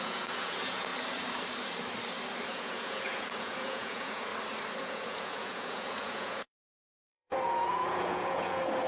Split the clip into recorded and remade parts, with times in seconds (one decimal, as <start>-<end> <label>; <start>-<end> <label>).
0.0-0.9 remade; 0.9-2.5 recorded; 2.5-4.3 remade; 4.3-4.8 recorded; 4.8-8.9 remade